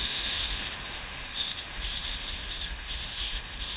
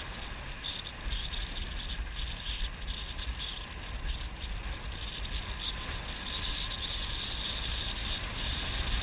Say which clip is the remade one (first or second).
first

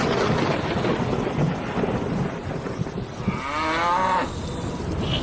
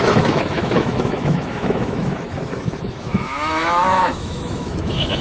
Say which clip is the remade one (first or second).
second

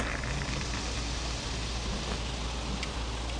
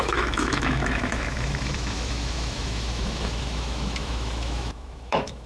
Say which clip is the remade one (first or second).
second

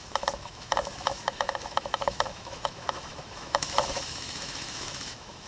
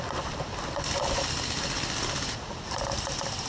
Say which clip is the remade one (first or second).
first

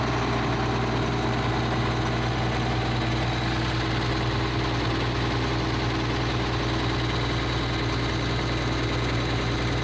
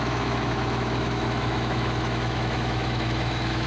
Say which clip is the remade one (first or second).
second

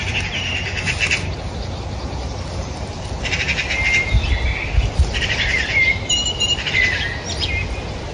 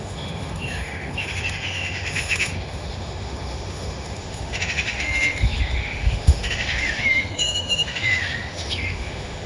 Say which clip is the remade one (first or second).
second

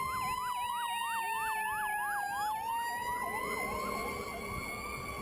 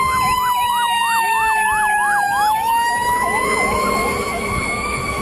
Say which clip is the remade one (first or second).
second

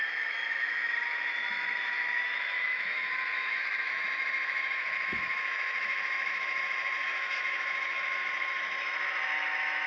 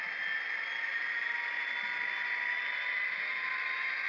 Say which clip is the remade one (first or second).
first